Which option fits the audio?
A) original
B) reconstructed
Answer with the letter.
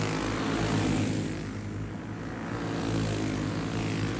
A